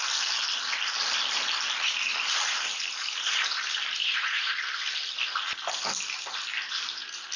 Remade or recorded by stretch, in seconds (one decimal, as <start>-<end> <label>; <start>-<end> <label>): 0.0-4.0 recorded; 4.0-4.5 remade; 4.5-7.4 recorded